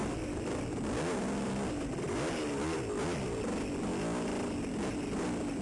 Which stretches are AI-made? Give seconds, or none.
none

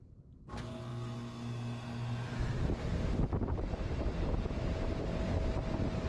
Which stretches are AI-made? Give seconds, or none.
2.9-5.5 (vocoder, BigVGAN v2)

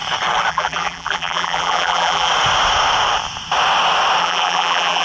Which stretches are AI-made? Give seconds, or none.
0.5-2.3 (vocoder, BigVGAN v2); 4.2-5.0

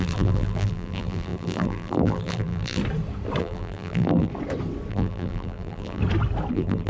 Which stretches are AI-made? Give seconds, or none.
0.0-2.8 (vocoder, BigVGAN v2); 3.4-4.3; 4.9-6.0; 6.5-6.9

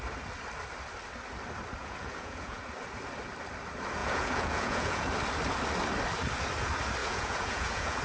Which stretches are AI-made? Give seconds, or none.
1.8-2.7 (vocoder, Vocos); 4.0-5.1; 7.0-8.0

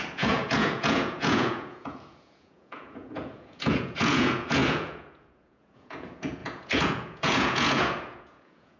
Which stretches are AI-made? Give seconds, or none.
0.0-8.8 (vocoder, Vocos)

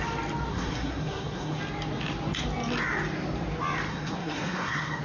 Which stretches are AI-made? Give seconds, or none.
0.5-1.6 (codec, SNAC); 3.9-5.0

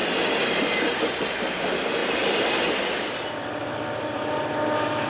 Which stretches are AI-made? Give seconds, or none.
0.0-1.2 (vocoder, BigVGAN v2); 2.0-2.6